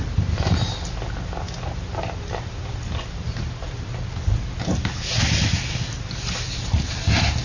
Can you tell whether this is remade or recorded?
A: recorded